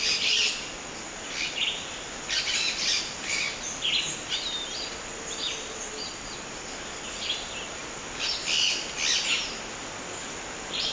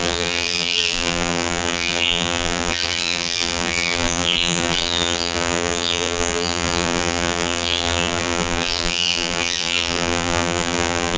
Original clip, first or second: first